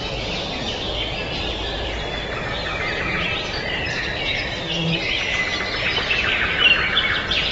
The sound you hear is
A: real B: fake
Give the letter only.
A